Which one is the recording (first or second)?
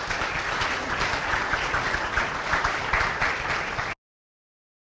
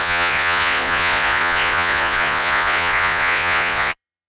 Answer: first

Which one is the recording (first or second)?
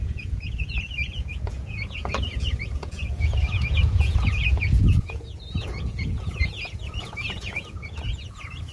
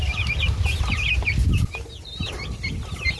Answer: second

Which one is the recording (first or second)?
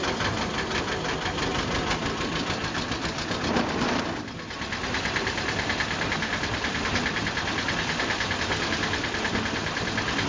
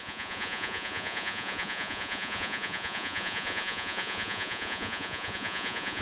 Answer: first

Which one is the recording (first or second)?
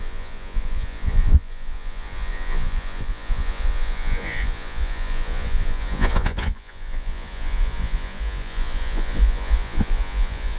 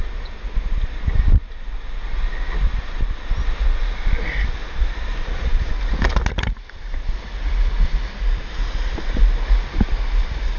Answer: second